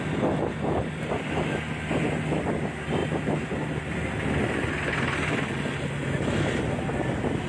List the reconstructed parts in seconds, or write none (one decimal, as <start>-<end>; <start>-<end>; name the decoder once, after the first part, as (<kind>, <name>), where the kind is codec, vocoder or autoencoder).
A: none